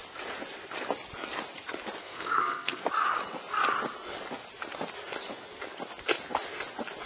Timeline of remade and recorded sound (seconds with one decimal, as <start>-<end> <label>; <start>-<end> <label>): 0.0-2.0 recorded; 2.0-2.8 remade; 2.8-7.1 recorded